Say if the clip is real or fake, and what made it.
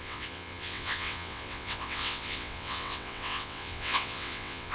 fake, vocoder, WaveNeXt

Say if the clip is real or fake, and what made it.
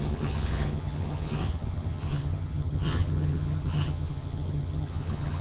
fake, vocoder, HiFi-GAN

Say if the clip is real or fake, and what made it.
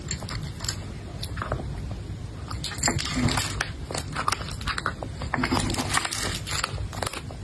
real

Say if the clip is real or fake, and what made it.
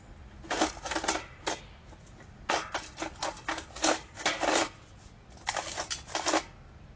real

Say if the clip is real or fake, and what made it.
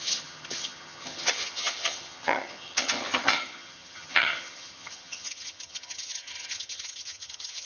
fake, vocoder, HiFi-GAN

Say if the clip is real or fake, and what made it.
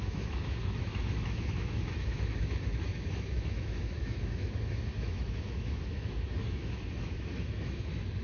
fake, autoencoder, DAC-VAE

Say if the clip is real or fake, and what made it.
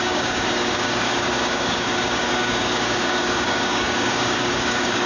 fake, codec, DAC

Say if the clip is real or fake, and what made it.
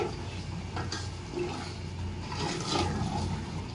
real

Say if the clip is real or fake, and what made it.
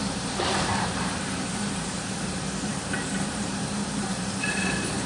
fake, vocoder, BigVGAN v2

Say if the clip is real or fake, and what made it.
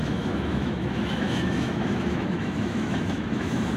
fake, autoencoder, DAC-VAE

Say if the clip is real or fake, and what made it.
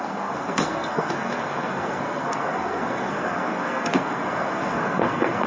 fake, codec, SNAC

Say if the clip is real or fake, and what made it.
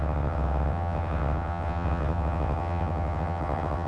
fake, vocoder, WaveNeXt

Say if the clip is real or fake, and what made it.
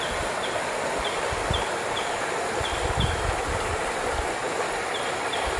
real